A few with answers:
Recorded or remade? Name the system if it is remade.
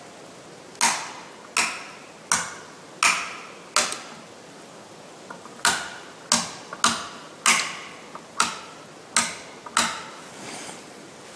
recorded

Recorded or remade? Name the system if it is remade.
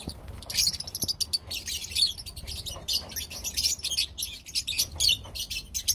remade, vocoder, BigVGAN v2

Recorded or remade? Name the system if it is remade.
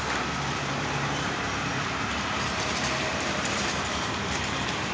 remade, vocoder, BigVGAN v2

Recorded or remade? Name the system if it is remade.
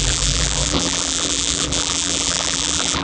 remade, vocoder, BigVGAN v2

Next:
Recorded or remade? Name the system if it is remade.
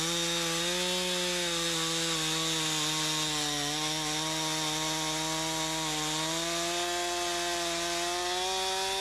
recorded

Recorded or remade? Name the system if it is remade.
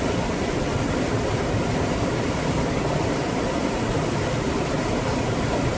recorded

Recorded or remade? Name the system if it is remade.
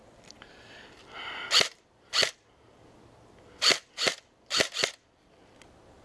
remade, vocoder, BigVGAN v2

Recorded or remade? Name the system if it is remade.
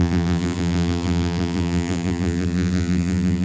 remade, vocoder, BigVGAN v2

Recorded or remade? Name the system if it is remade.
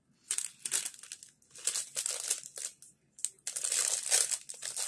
recorded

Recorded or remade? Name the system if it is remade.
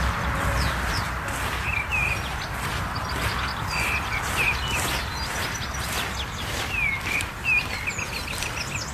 recorded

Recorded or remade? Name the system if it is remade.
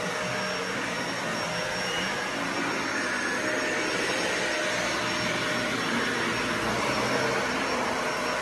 recorded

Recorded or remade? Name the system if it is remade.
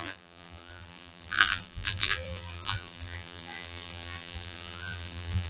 remade, vocoder, BigVGAN v2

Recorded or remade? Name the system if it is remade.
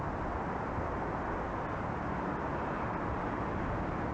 recorded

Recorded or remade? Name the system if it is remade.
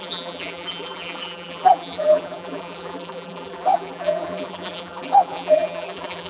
remade, vocoder, BigVGAN v2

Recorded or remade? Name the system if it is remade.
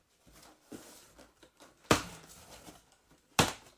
recorded